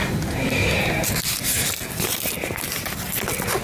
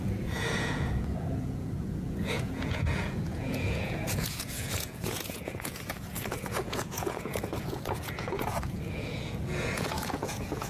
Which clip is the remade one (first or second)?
second